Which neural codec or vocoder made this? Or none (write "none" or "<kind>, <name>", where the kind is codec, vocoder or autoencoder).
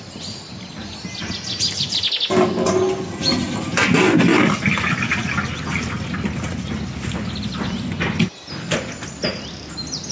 none